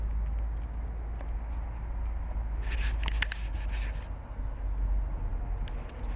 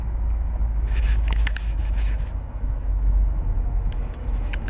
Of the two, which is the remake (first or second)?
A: second